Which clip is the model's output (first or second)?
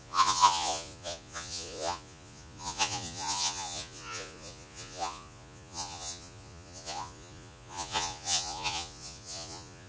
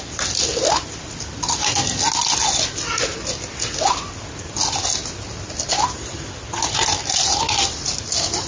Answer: first